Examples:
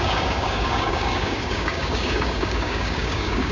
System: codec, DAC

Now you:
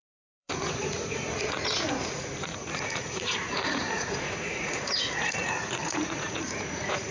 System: vocoder, Vocos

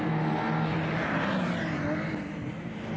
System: none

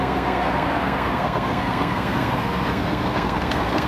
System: codec, SNAC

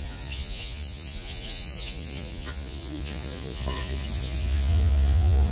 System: vocoder, Vocos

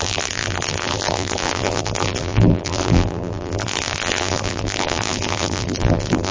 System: vocoder, BigVGAN v2